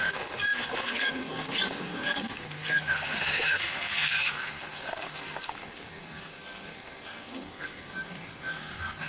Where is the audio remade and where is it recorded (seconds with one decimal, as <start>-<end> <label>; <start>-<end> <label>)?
0.0-9.1 remade